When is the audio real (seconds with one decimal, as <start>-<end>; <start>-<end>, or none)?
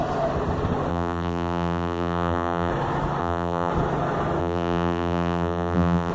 0.0-0.9; 2.7-3.2; 3.7-4.4